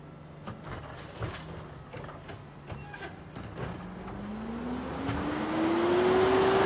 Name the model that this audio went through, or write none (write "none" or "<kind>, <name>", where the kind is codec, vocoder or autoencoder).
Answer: none